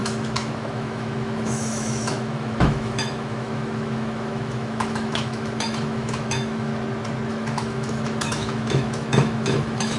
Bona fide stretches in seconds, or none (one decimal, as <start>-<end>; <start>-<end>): 6.7-7.3